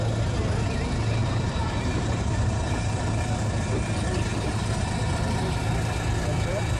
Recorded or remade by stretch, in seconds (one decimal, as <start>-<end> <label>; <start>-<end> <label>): 0.0-1.2 recorded; 1.2-3.2 remade; 3.2-4.3 recorded; 4.3-4.9 remade; 4.9-6.8 recorded